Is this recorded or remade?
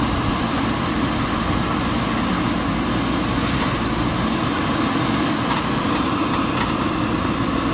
recorded